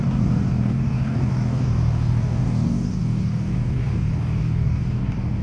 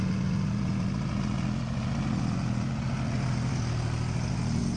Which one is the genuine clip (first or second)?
second